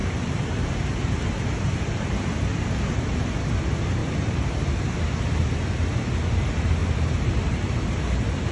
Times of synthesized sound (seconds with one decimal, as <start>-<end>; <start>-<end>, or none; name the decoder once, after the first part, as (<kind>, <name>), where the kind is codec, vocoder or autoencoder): 0.0-3.3 (vocoder, BigVGAN v2); 4.0-4.7